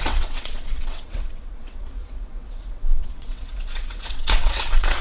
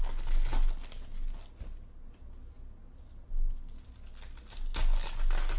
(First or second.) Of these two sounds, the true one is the second